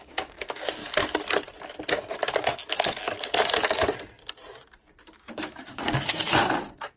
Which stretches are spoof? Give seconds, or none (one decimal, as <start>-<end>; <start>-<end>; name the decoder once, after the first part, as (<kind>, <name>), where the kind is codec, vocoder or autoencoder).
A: 0.0-0.8 (codec, DAC); 5.0-7.0